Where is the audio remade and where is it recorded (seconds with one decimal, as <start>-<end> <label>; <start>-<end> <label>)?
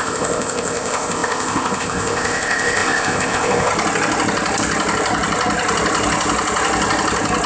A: 0.0-3.7 remade; 3.7-7.5 recorded